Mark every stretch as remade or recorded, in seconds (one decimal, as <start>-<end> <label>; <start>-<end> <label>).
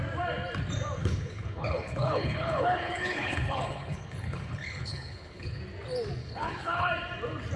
0.0-1.0 recorded; 1.0-5.6 remade; 5.6-6.2 recorded; 6.2-6.9 remade; 6.9-7.6 recorded